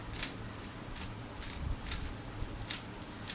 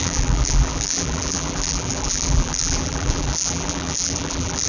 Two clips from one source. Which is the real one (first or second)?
first